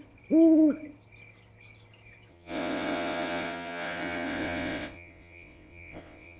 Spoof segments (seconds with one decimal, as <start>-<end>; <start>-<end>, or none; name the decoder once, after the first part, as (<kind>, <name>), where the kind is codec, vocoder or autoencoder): 2.3-6.4 (vocoder, WaveNeXt)